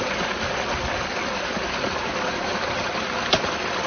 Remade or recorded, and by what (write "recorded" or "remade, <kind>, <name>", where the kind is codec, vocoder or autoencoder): recorded